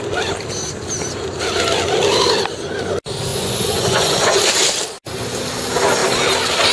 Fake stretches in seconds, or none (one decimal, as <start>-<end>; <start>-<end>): 3.3-4.4